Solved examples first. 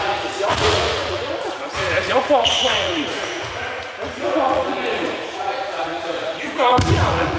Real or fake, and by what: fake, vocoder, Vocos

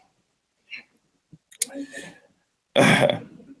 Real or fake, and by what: real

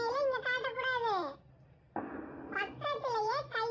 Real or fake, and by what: real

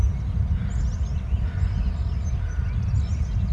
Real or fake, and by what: real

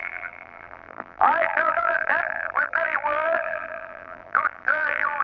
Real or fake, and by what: fake, vocoder, BigVGAN v2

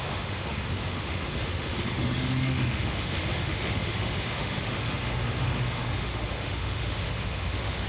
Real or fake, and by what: fake, autoencoder, DAC-VAE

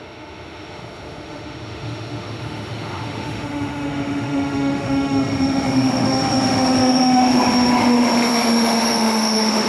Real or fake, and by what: fake, autoencoder, DAC-VAE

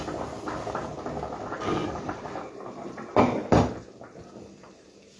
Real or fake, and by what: real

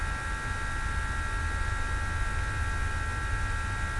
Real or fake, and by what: real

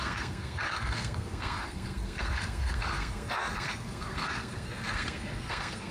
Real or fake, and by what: fake, codec, SNAC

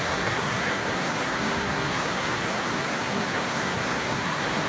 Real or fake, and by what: fake, codec, SNAC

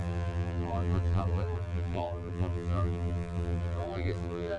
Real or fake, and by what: fake, vocoder, BigVGAN v2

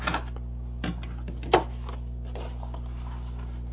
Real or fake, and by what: real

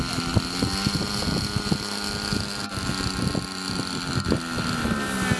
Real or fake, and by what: real